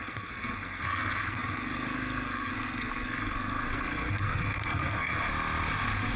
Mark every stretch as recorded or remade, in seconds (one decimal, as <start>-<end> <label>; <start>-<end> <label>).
0.0-5.3 remade; 5.3-6.2 recorded